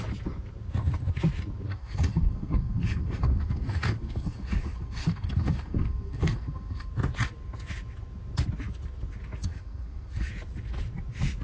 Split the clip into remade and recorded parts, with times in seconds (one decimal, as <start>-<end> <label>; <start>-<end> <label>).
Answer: 0.0-1.7 recorded; 1.7-6.9 remade; 6.9-9.4 recorded; 9.4-10.3 remade; 10.3-11.4 recorded